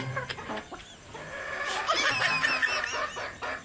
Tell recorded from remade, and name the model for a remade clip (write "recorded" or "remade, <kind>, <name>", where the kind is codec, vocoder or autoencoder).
recorded